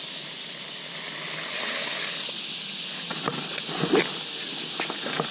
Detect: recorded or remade recorded